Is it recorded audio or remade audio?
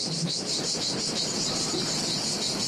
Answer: recorded